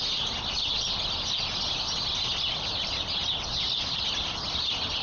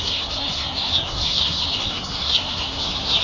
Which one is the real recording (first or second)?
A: first